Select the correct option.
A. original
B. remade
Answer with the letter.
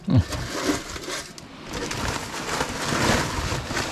A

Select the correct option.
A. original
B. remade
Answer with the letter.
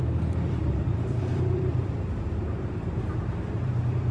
B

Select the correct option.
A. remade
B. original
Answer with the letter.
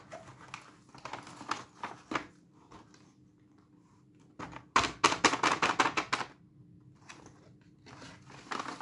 B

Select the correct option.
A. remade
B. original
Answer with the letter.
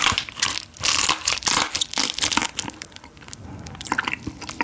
A